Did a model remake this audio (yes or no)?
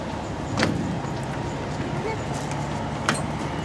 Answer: no